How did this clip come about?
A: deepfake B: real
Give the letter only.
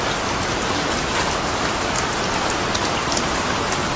B